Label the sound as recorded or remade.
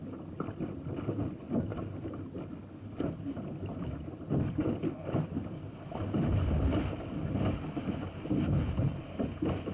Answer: recorded